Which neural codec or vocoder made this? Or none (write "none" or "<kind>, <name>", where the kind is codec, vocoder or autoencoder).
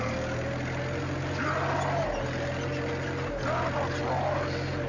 none